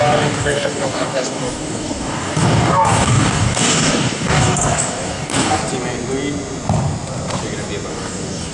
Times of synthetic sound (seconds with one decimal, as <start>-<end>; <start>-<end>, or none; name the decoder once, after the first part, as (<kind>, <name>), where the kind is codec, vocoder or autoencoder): 0.0-5.6 (codec, DAC); 7.9-8.5